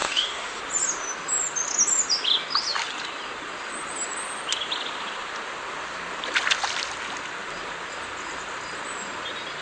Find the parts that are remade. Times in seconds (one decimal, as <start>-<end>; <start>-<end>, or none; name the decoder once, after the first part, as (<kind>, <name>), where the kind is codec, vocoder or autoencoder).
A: 0.0-0.6 (autoencoder, DAC-VAE)